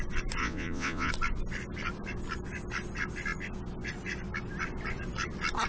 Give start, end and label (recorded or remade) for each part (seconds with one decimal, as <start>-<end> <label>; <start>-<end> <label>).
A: 0.0-0.4 recorded; 0.4-1.1 remade; 1.1-5.7 recorded